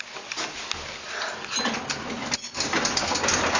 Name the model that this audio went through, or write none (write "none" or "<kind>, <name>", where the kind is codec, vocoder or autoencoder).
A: none